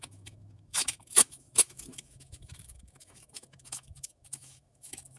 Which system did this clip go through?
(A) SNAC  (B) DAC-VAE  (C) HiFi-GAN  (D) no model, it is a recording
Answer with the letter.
B